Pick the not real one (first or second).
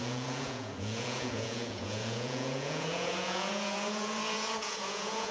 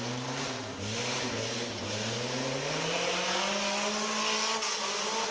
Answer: first